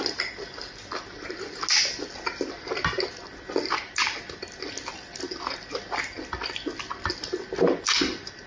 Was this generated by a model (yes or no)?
no